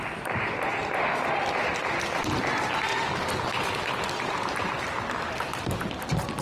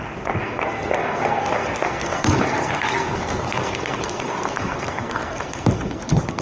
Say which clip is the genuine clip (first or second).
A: first